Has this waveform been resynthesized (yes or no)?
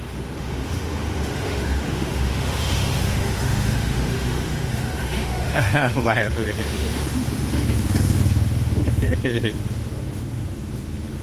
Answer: yes